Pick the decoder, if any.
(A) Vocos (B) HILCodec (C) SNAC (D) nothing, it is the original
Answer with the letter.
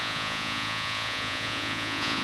A